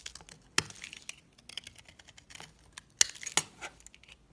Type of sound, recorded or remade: recorded